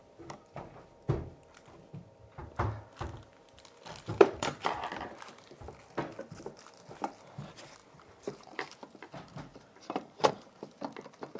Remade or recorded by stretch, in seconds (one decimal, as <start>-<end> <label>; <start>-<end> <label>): 0.0-4.1 recorded; 4.1-4.6 remade; 4.6-7.8 recorded; 7.8-10.3 remade; 10.3-11.4 recorded